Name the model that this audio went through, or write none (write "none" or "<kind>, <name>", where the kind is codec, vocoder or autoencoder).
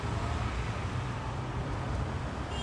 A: vocoder, BigVGAN v2